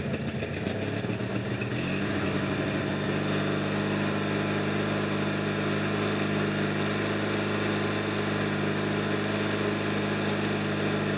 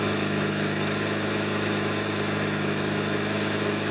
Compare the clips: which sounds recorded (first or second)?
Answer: first